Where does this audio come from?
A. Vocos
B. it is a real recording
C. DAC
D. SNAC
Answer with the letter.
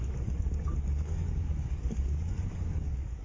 C